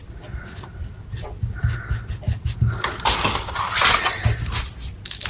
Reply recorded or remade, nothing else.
recorded